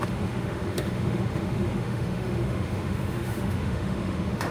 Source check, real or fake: fake